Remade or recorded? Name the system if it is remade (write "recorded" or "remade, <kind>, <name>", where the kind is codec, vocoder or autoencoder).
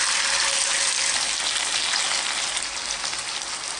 recorded